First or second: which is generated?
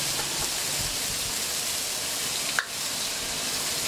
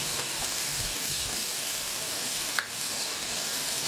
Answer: second